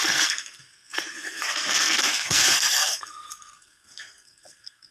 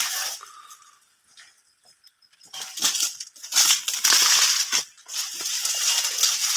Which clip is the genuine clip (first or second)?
second